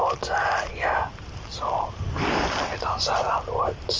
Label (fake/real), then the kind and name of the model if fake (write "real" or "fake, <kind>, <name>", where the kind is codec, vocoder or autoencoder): real